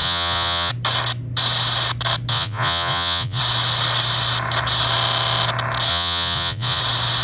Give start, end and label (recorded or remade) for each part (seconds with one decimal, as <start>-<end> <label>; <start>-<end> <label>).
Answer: 0.0-0.7 remade; 0.7-2.3 recorded; 2.3-3.4 remade; 3.4-5.9 recorded; 5.9-6.8 remade; 6.8-7.2 recorded